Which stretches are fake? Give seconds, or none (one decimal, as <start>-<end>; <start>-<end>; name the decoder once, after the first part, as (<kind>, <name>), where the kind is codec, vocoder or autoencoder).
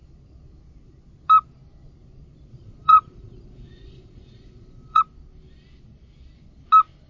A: 2.5-5.0 (vocoder, Vocos)